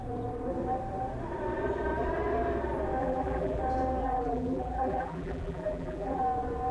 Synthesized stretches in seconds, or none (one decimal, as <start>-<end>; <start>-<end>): 3.0-3.6; 4.0-6.2